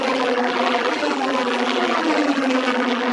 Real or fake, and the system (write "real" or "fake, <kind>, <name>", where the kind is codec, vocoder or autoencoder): fake, vocoder, BigVGAN v2